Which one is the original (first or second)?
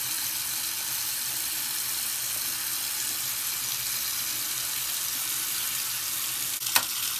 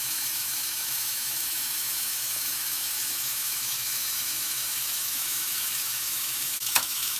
first